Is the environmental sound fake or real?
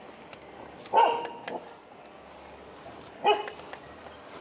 real